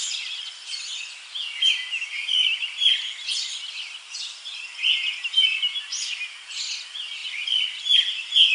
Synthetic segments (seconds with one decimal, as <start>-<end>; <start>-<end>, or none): none